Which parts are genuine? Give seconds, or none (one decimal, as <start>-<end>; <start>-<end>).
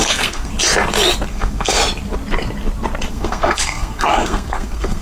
0.5-1.3; 1.8-3.1